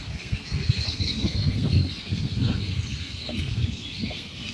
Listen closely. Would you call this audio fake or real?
fake